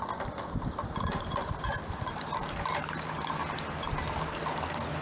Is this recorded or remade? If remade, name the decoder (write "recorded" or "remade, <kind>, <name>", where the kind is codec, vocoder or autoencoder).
recorded